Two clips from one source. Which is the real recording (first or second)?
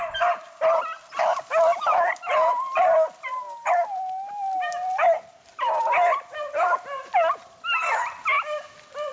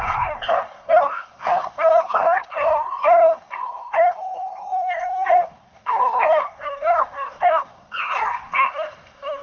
first